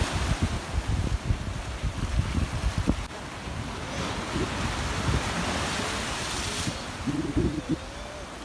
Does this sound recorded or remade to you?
recorded